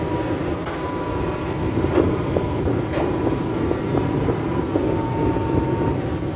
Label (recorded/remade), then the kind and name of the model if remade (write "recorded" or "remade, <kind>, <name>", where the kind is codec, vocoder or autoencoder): recorded